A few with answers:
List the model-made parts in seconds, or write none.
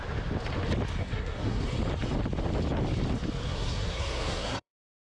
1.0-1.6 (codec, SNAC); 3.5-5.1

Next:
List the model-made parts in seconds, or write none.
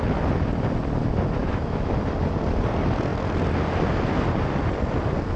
1.4-1.9 (autoencoder, DAC-VAE)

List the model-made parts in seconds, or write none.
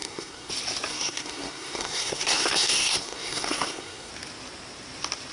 0.0-0.5 (codec, SNAC); 0.9-4.1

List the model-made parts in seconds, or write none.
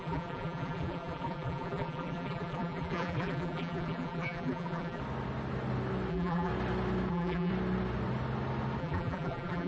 0.0-5.0 (vocoder, BigVGAN v2); 6.1-6.5; 7.1-7.5; 8.8-9.7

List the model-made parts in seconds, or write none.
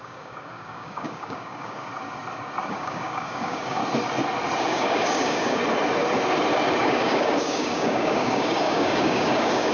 0.0-1.9 (codec, DAC); 2.7-3.8; 4.6-5.6; 6.8-9.7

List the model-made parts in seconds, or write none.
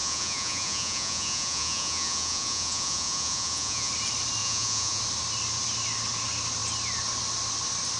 0.0-3.9 (vocoder, Vocos); 4.4-5.0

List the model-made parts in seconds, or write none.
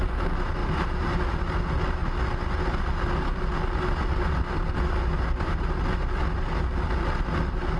0.6-1.2 (vocoder, BigVGAN v2)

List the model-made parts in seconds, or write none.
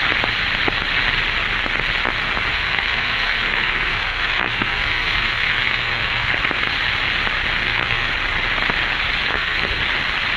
2.5-6.3 (codec, SNAC); 7.6-8.1; 9.3-9.8